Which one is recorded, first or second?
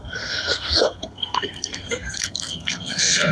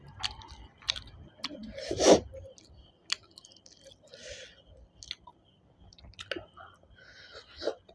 second